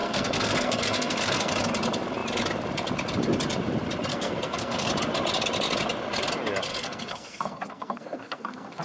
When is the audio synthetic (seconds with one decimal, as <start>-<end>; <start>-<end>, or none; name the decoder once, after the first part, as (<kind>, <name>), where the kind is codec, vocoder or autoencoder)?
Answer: 0.0-1.5 (codec, SNAC); 4.1-4.9; 6.7-8.8